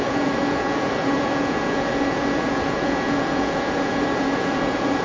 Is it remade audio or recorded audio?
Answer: remade